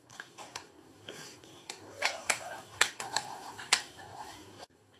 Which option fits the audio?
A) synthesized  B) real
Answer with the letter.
A